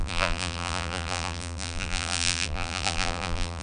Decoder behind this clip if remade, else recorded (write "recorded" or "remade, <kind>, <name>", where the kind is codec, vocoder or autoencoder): remade, vocoder, BigVGAN v2